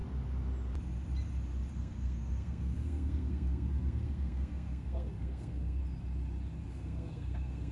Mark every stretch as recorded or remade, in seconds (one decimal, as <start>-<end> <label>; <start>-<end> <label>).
0.0-1.7 recorded; 1.7-5.8 remade; 5.8-6.7 recorded; 6.7-7.7 remade